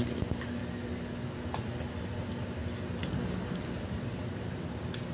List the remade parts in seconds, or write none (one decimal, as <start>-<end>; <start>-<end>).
none